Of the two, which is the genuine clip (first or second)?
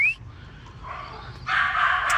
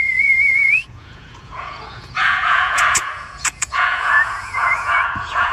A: first